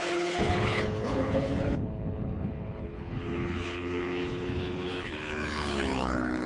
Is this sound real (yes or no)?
no